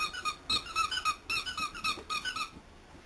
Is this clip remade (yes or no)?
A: no